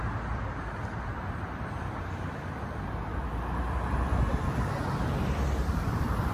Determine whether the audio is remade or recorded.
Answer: remade